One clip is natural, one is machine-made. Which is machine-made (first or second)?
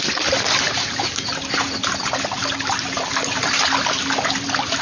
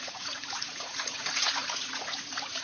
second